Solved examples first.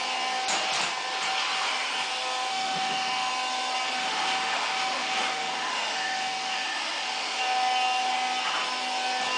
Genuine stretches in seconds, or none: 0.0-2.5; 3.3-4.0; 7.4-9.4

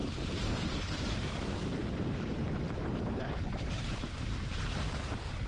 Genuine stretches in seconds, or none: none

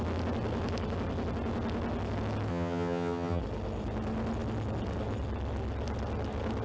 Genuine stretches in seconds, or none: 0.0-2.5; 3.4-6.6

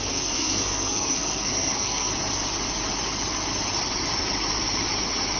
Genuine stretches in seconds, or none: 2.1-5.4

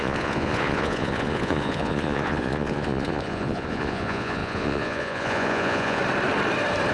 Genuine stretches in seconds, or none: 6.0-6.9

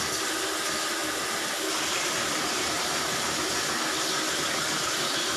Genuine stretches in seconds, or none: 0.0-5.4

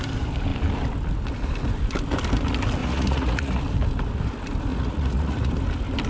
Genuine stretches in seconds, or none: 0.0-2.8; 3.6-4.7; 5.5-6.1